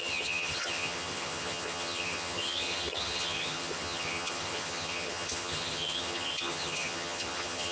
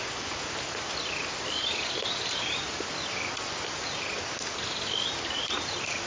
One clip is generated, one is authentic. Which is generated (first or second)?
first